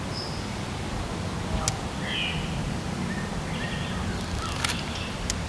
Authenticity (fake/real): real